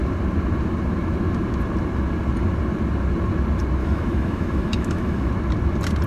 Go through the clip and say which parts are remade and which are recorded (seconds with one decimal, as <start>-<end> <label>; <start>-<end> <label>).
0.0-3.8 recorded; 3.8-5.3 remade; 5.3-6.1 recorded